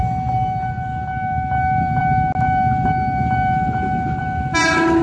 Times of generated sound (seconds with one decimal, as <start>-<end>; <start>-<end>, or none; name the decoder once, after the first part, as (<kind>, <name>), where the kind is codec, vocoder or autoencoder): none